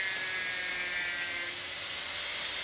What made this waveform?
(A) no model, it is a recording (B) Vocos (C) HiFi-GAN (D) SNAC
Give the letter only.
A